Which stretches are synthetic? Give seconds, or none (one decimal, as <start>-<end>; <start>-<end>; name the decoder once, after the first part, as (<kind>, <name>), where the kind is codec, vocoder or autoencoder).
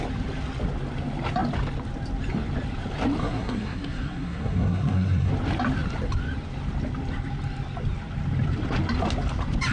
3.2-5.3 (codec, SNAC)